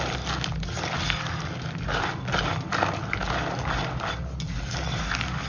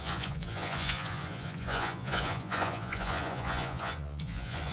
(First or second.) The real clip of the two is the first